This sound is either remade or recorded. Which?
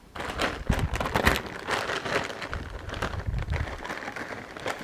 recorded